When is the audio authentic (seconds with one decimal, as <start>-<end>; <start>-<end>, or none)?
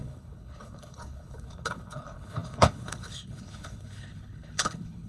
none